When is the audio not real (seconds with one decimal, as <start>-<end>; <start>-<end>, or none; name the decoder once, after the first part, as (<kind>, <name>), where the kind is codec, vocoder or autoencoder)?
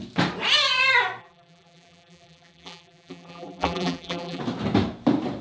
1.2-4.4 (vocoder, BigVGAN v2)